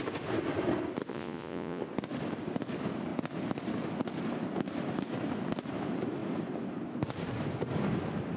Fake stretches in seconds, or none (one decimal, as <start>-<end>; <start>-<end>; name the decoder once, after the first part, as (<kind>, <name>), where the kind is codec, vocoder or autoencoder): 1.1-1.8 (vocoder, Vocos)